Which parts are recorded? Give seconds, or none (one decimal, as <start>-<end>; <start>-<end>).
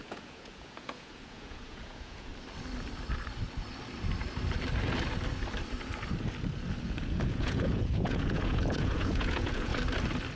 2.3-6.8; 9.7-10.4